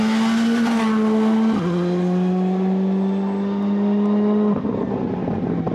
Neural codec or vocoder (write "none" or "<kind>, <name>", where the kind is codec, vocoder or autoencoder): none